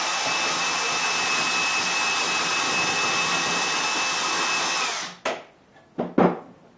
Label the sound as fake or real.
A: real